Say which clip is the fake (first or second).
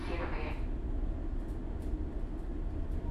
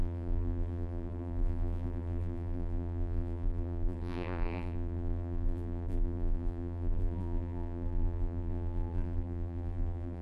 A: second